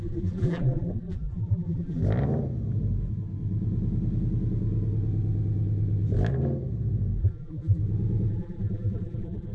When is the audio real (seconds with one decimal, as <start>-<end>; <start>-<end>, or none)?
2.0-7.2; 7.8-8.3